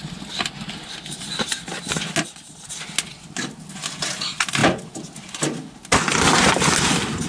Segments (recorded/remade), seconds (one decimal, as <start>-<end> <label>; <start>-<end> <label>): 0.0-2.2 recorded; 2.2-2.7 remade; 2.7-7.3 recorded